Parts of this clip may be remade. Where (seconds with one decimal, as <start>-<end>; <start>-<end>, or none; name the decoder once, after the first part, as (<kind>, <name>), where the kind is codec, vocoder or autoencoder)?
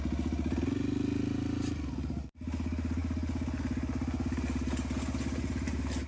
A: none